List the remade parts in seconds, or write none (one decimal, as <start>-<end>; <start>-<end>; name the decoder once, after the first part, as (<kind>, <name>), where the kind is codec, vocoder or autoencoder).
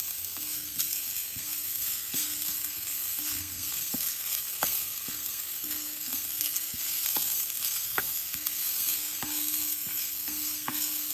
0.0-11.1 (codec, SNAC)